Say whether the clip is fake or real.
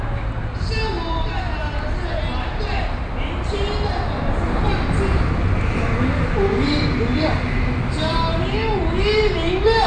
real